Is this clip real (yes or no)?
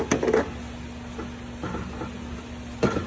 yes